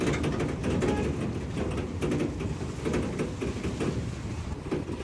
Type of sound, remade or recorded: recorded